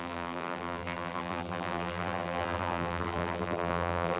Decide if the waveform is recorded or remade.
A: remade